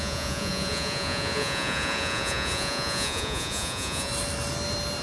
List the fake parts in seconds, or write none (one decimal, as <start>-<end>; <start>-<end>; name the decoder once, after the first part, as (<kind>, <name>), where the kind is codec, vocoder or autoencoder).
0.0-4.1 (vocoder, Vocos)